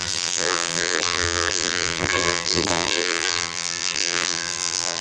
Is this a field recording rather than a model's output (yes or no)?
no